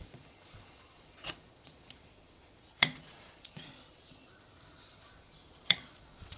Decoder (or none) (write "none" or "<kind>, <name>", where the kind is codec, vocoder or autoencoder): vocoder, Vocos